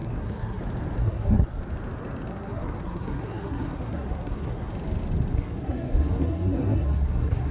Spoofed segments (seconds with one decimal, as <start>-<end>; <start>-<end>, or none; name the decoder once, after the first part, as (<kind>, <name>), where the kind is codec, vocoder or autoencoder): 0.0-0.6 (codec, SNAC); 1.0-1.6; 2.3-4.7; 5.3-7.5